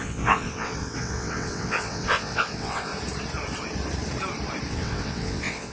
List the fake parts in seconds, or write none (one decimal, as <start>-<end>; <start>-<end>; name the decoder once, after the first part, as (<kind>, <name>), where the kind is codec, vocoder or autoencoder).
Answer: 0.0-2.9 (vocoder, WaveNeXt); 4.7-5.7